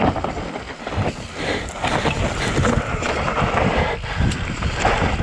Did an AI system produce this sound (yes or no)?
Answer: no